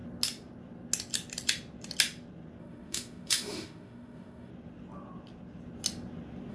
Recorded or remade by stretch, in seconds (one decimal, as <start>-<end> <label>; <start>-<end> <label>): 0.0-2.6 recorded; 2.6-4.5 remade; 4.5-6.5 recorded